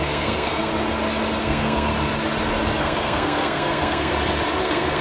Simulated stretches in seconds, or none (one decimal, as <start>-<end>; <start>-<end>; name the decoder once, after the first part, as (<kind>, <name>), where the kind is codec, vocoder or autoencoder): 0.0-0.7 (codec, SNAC); 1.4-1.9; 2.8-4.1; 4.6-5.0